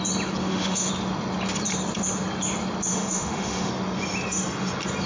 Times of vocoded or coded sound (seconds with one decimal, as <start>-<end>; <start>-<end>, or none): 0.4-0.9; 2.9-3.7